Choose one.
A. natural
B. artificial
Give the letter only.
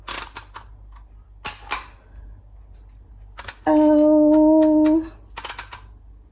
A